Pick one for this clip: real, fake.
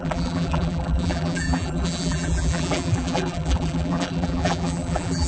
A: fake